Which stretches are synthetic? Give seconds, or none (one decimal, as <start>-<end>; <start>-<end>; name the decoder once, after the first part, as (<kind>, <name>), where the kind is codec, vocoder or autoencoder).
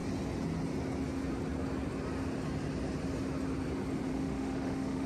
4.1-5.1 (autoencoder, DAC-VAE)